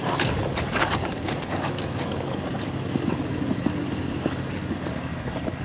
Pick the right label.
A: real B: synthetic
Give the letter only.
B